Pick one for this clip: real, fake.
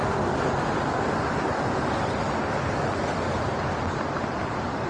real